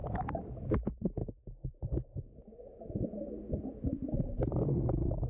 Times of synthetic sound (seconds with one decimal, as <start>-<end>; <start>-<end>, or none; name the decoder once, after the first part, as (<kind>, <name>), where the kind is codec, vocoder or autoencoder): none